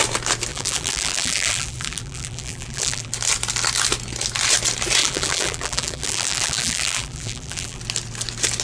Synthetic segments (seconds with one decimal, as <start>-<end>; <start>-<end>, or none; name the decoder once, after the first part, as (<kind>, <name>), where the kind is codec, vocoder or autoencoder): 0.5-3.1 (vocoder, BigVGAN v2); 5.0-7.8